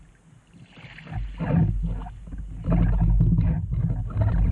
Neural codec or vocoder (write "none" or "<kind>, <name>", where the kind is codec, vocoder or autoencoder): none